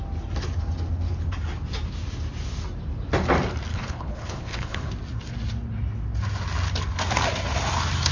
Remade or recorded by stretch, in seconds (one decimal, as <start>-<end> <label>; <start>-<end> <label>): 0.0-3.7 recorded; 3.7-4.9 remade; 4.9-8.1 recorded